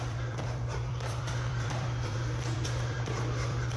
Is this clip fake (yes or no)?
yes